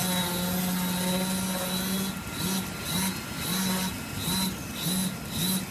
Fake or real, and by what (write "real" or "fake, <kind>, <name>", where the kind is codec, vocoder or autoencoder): real